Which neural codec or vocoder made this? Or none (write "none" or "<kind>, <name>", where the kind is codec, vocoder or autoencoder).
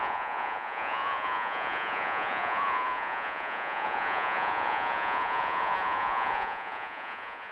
vocoder, Vocos